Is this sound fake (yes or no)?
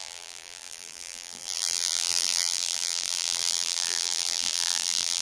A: yes